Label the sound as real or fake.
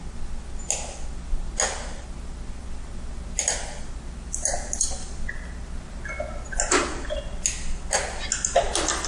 real